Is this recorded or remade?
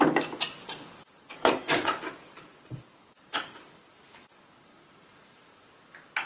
recorded